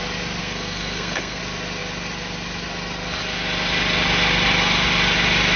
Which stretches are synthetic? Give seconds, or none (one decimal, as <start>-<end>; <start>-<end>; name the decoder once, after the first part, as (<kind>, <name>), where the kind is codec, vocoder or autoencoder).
0.4-1.4 (codec, SNAC)